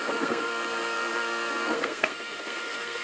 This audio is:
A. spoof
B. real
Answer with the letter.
A